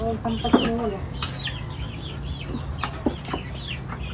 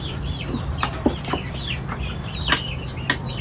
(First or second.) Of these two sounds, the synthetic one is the second